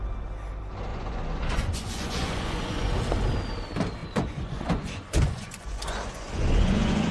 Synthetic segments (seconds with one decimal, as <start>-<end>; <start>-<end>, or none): 0.9-2.9; 4.0-7.1